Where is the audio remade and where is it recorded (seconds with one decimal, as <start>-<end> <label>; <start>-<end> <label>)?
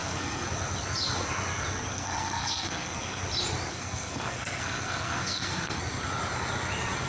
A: 0.0-0.5 remade; 0.5-1.9 recorded; 1.9-3.2 remade; 3.2-3.7 recorded; 3.7-5.8 remade; 5.8-7.1 recorded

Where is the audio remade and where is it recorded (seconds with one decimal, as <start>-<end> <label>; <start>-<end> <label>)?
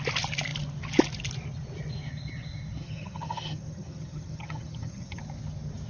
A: 0.0-2.8 recorded; 2.8-5.2 remade; 5.2-5.9 recorded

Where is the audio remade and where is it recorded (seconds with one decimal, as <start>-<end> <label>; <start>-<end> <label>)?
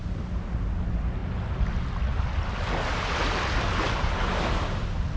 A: 0.0-5.2 recorded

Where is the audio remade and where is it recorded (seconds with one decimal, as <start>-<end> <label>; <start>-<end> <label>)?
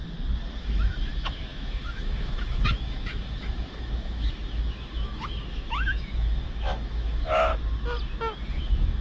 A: 0.0-0.6 recorded; 0.6-7.5 remade; 7.5-8.5 recorded; 8.5-9.0 remade